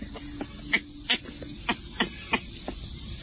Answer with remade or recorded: recorded